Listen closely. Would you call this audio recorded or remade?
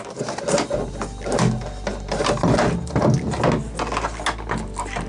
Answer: recorded